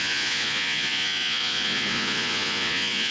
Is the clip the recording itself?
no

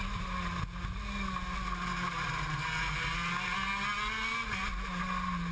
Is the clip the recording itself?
yes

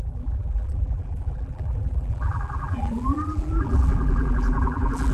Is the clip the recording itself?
no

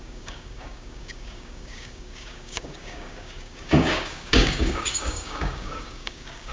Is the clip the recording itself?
no